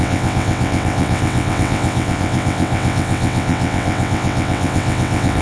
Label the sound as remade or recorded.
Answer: remade